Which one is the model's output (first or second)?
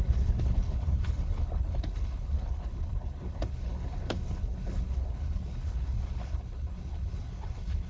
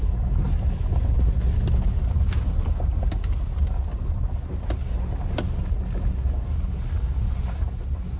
first